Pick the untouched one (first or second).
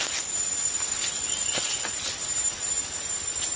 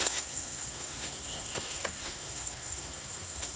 first